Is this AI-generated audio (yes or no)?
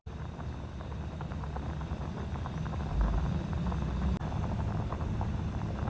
no